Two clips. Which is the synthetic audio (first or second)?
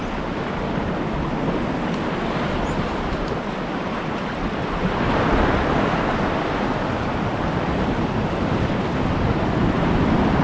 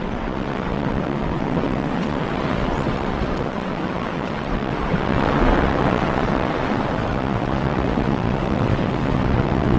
second